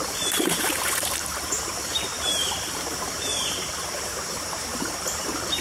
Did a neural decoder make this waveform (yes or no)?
yes